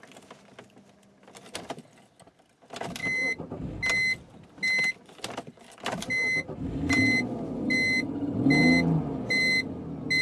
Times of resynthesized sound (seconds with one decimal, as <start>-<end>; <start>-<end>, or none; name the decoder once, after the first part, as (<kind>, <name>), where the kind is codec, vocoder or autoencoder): none